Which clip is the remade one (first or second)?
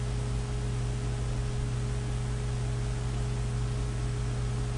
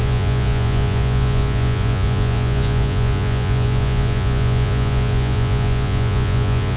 second